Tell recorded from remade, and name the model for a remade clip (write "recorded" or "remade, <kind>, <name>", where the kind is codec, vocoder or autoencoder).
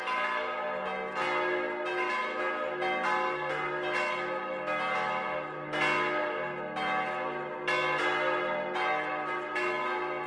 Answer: recorded